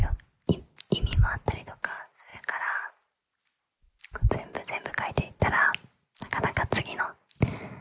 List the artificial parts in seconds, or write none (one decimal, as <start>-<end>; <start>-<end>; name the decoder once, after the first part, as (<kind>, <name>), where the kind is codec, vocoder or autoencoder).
none